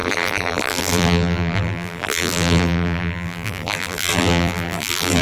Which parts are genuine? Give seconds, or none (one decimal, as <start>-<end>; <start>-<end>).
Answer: none